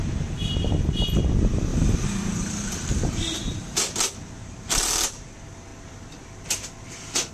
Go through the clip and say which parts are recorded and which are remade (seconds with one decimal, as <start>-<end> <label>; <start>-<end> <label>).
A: 0.0-1.7 recorded; 1.7-3.8 remade; 3.8-4.4 recorded; 4.4-5.3 remade; 5.3-7.3 recorded